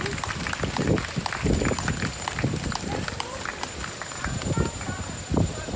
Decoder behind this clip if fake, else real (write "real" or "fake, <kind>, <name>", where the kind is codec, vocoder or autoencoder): real